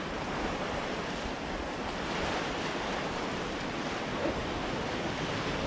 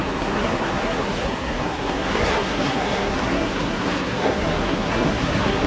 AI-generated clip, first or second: second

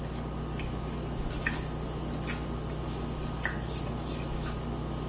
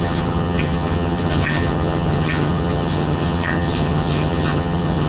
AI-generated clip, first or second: second